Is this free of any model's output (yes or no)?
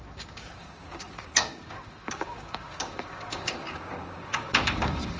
no